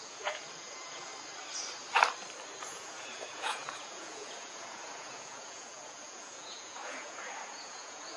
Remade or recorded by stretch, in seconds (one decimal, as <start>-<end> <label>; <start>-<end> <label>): 0.0-1.1 remade; 1.1-2.6 recorded; 2.6-8.2 remade